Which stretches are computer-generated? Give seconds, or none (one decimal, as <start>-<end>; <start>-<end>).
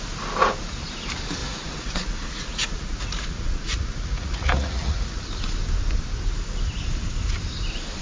1.4-5.2